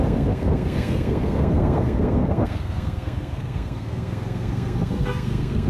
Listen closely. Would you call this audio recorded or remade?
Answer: remade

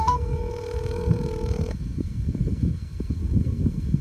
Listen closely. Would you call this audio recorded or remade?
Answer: remade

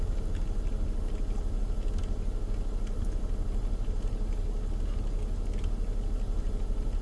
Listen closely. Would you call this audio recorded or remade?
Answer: recorded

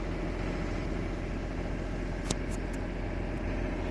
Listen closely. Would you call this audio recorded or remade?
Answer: recorded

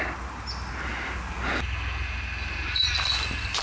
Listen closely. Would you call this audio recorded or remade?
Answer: recorded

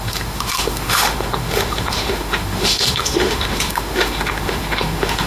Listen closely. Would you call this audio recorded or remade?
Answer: remade